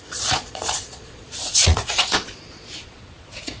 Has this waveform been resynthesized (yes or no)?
yes